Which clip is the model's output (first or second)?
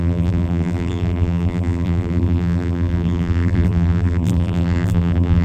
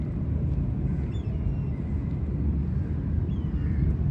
first